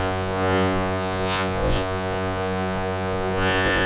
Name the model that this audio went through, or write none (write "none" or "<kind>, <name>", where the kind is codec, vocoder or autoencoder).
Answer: vocoder, Vocos